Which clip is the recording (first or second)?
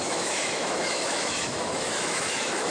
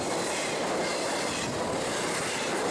second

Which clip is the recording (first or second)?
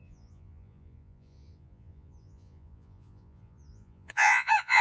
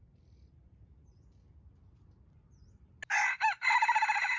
second